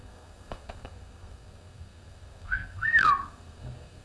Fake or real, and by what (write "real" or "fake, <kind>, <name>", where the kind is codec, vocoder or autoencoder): fake, codec, SNAC